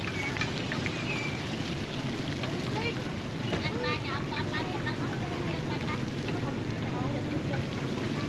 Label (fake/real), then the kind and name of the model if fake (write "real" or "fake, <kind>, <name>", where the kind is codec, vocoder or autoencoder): real